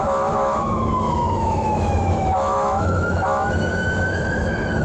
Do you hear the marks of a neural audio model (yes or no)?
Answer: yes